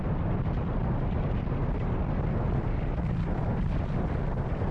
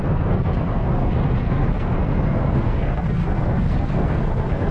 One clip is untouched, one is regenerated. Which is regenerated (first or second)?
second